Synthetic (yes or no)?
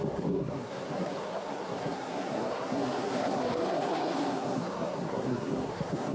yes